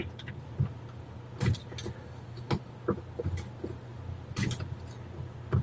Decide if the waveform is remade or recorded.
recorded